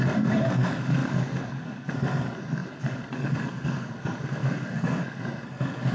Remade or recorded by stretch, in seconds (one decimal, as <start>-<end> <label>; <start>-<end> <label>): 0.0-5.9 remade